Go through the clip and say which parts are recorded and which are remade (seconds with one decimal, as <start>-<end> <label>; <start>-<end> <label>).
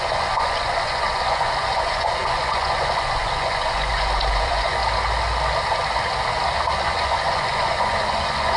0.0-4.8 remade; 4.8-6.8 recorded; 6.8-8.6 remade